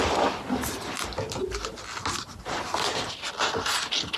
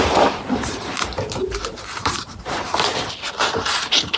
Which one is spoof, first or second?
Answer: second